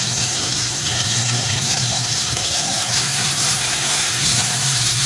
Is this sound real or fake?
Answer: fake